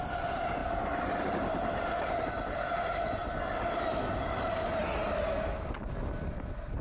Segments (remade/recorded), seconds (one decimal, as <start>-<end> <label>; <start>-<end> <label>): 0.0-6.8 recorded